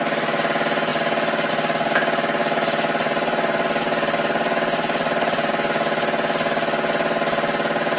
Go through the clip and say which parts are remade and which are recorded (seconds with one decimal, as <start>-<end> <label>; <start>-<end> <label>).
0.0-2.4 recorded; 2.4-5.5 remade; 5.5-8.0 recorded